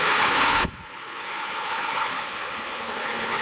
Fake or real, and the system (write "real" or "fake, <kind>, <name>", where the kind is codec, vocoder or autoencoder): fake, codec, HILCodec